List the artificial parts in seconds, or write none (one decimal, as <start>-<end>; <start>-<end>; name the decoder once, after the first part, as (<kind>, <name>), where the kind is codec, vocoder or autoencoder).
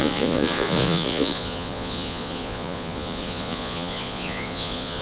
0.0-5.0 (vocoder, Vocos)